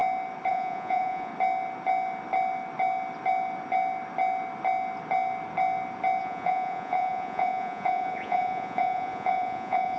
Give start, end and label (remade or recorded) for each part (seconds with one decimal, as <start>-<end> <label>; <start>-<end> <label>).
0.0-0.5 recorded; 0.5-1.3 remade; 1.3-6.2 recorded; 6.2-10.0 remade